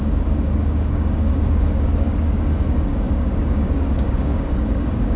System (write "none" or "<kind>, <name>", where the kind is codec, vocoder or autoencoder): codec, DAC